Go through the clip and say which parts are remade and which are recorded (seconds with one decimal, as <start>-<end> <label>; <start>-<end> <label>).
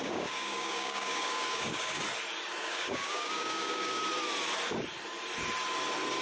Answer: 0.0-2.0 remade; 2.0-2.6 recorded; 2.6-4.0 remade; 4.0-6.2 recorded